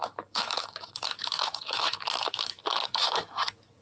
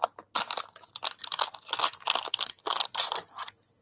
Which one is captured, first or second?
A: second